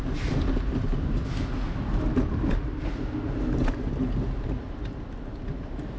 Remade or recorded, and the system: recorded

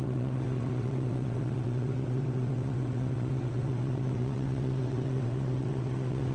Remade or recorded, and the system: remade, vocoder, WaveNeXt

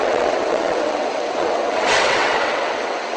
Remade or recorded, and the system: remade, vocoder, WaveNeXt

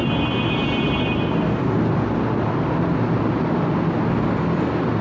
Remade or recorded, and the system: recorded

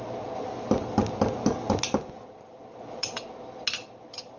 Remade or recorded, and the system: recorded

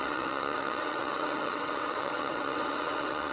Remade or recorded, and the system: remade, vocoder, WaveNeXt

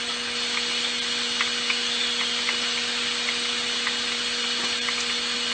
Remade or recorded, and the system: recorded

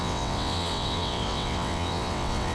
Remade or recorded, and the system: remade, vocoder, WaveNeXt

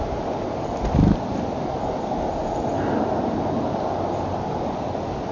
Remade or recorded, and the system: recorded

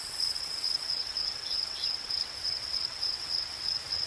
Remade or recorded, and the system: remade, vocoder, WaveNeXt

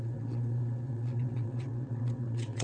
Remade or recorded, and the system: remade, vocoder, WaveNeXt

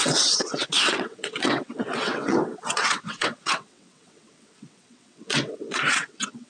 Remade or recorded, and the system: remade, vocoder, WaveNeXt